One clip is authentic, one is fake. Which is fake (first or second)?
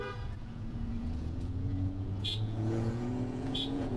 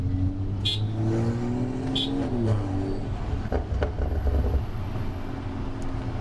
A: first